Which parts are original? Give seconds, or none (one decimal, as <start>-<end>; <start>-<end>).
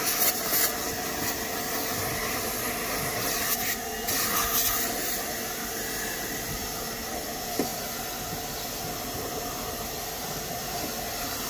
0.0-11.5